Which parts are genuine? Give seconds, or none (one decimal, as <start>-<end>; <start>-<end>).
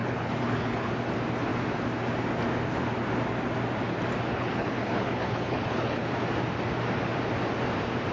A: 0.9-4.3; 6.1-8.1